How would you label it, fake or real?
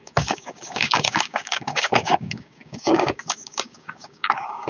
fake